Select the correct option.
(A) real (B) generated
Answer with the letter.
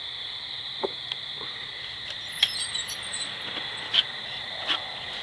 A